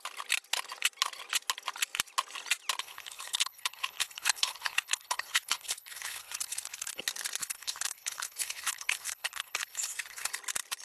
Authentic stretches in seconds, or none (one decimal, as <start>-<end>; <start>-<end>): 0.0-2.8; 7.0-7.4; 10.3-10.8